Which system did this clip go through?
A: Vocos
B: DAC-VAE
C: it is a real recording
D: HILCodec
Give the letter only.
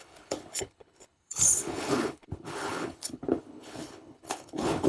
D